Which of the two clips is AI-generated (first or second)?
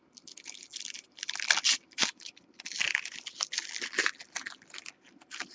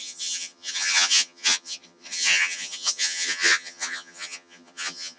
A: second